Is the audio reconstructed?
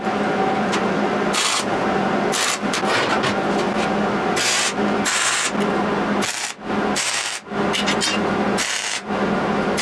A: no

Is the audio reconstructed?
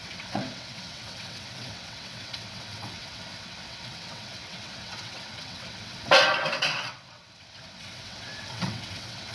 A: yes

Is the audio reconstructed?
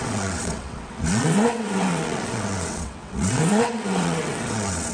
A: yes